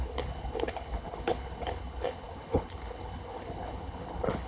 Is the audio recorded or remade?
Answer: remade